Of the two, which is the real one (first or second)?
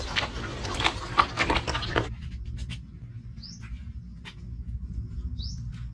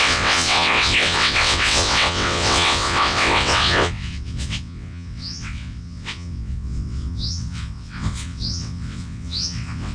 first